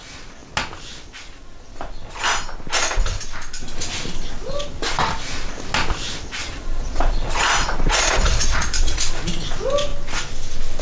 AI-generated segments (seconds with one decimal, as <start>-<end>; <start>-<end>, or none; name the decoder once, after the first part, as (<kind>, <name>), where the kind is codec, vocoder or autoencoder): 6.4-9.0 (vocoder, Vocos)